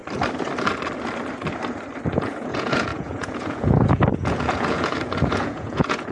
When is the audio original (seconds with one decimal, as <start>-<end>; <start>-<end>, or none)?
0.0-2.1